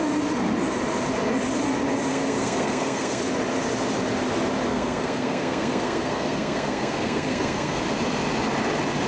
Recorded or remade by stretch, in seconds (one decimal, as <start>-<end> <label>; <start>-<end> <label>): 0.0-2.1 recorded; 2.1-3.2 remade; 3.2-4.7 recorded; 4.7-7.8 remade; 7.8-9.1 recorded